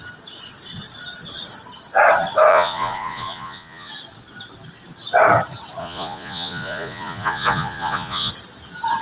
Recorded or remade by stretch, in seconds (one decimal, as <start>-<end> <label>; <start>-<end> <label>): 0.0-2.5 recorded; 2.5-3.9 remade; 3.9-5.8 recorded; 5.8-8.3 remade; 8.3-9.0 recorded